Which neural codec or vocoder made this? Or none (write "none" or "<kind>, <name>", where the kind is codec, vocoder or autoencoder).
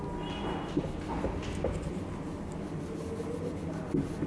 none